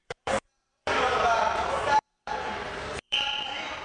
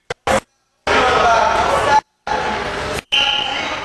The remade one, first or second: first